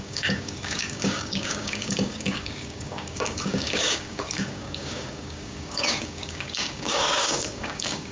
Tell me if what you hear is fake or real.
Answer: fake